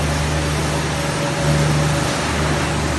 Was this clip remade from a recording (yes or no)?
no